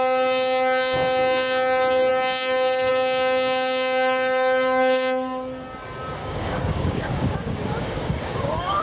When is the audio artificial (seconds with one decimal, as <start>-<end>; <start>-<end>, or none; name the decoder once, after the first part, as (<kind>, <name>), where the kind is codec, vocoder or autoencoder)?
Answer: 6.2-8.8 (codec, DAC)